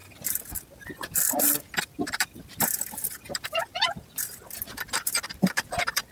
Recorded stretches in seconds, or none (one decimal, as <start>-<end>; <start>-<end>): none